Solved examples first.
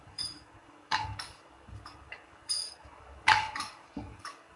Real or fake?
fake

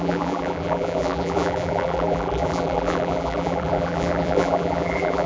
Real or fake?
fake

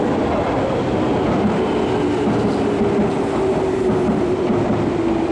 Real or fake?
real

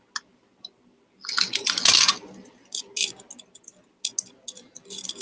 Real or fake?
real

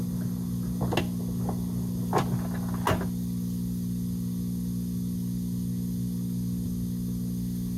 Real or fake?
real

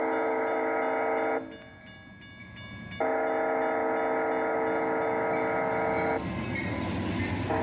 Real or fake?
real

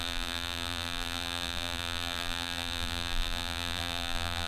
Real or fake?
fake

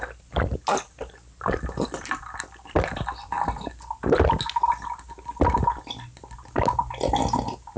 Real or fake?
real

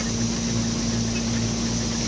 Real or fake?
real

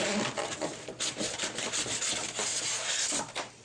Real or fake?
real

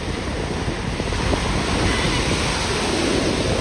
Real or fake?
real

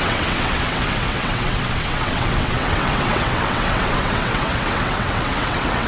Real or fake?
fake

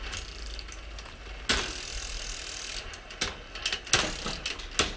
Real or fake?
real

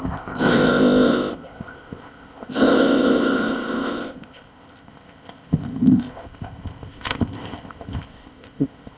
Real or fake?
fake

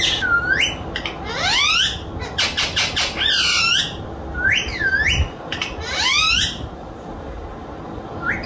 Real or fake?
real